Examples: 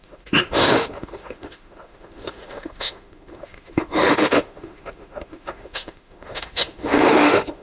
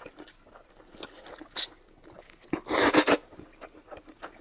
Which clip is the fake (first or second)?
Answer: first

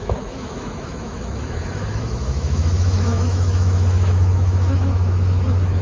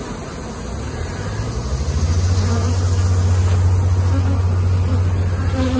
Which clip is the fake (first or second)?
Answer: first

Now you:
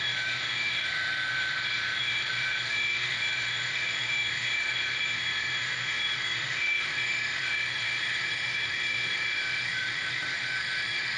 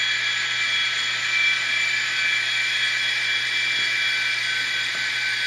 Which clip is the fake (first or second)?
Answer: first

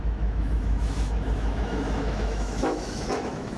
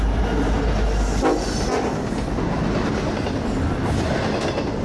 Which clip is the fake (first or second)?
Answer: first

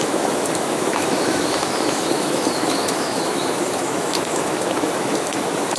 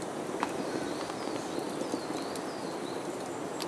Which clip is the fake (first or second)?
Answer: first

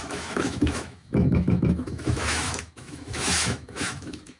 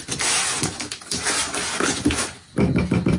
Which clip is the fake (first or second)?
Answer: first